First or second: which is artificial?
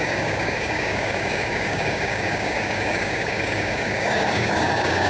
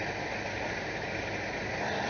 first